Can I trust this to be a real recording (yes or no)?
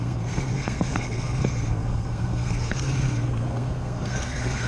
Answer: no